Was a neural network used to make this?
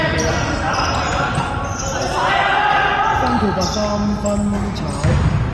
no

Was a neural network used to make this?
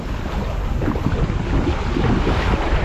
no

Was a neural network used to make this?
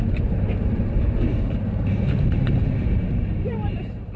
yes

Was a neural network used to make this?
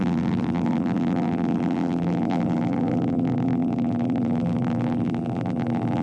yes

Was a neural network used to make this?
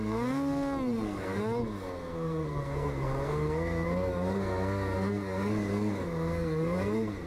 yes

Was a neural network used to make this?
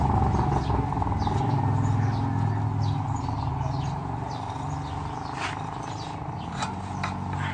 no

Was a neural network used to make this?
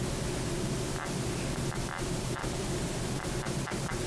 yes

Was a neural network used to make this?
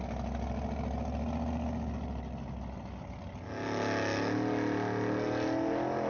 no